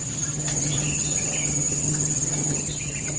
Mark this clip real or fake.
fake